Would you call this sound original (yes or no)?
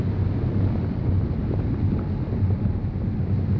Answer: yes